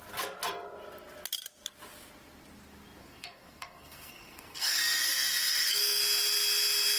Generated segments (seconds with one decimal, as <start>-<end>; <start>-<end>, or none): 3.0-6.0